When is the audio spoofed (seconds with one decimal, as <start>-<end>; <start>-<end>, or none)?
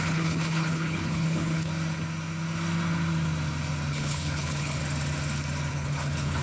0.0-1.7; 3.9-4.8; 5.7-6.4